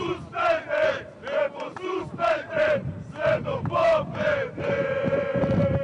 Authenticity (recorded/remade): remade